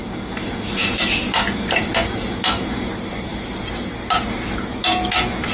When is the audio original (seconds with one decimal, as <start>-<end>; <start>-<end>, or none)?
1.2-1.9; 2.9-3.3; 3.9-5.5